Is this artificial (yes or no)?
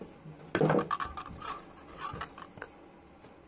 no